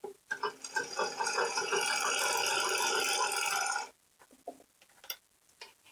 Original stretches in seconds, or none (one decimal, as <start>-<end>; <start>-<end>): 0.0-0.8; 1.8-5.9